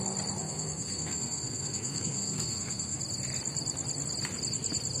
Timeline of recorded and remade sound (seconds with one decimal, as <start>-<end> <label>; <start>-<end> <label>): 0.0-0.4 recorded; 0.4-3.0 remade; 3.0-5.0 recorded